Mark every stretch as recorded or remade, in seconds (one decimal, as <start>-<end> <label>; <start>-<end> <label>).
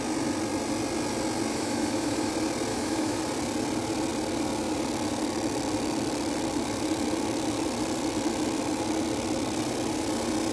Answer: 0.0-1.5 recorded; 1.5-2.3 remade; 2.3-2.7 recorded; 2.7-3.2 remade; 3.2-10.5 recorded